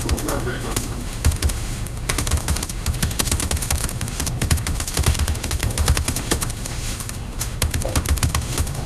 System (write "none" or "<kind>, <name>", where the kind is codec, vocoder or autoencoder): autoencoder, DAC-VAE